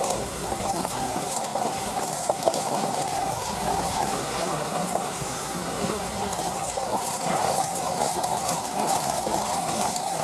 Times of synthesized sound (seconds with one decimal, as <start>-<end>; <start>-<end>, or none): 0.0-10.2